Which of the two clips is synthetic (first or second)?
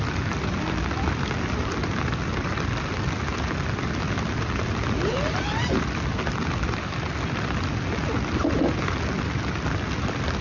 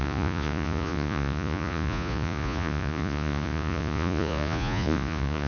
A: second